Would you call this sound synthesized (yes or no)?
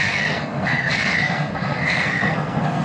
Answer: yes